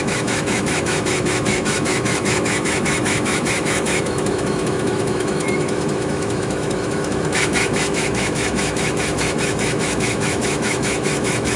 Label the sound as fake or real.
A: fake